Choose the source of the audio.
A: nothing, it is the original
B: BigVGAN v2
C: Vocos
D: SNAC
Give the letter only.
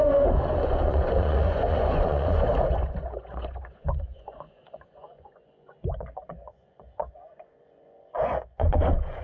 C